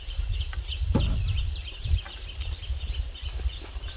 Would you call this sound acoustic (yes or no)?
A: no